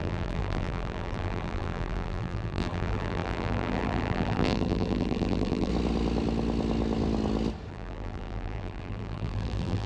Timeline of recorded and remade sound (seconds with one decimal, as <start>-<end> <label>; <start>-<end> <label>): 0.0-5.7 remade; 5.7-7.7 recorded; 7.7-9.9 remade

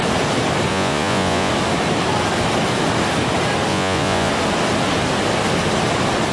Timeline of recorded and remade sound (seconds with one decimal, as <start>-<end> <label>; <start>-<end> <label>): 0.0-0.7 recorded; 0.7-1.5 remade; 1.5-3.7 recorded; 3.7-4.3 remade; 4.3-6.3 recorded

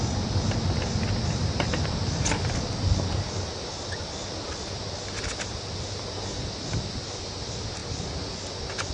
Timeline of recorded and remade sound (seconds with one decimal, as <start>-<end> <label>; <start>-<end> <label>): 0.0-8.9 recorded

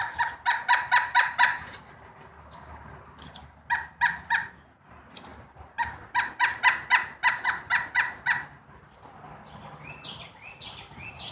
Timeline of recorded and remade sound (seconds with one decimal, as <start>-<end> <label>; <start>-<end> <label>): 0.0-1.1 recorded; 1.1-1.8 remade; 1.8-5.3 recorded; 5.3-6.1 remade; 6.1-11.3 recorded